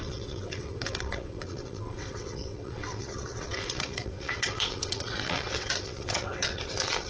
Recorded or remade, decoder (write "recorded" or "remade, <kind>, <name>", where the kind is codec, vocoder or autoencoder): remade, vocoder, WaveNeXt